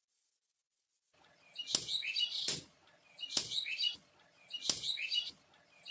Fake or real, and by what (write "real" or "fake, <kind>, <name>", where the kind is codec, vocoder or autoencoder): real